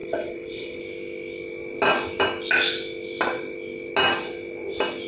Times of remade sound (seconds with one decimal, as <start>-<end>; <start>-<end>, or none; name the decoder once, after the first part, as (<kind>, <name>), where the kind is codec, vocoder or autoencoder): 0.0-0.8 (codec, HILCodec)